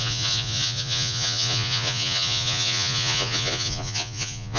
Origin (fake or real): fake